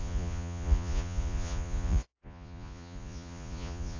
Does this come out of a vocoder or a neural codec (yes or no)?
yes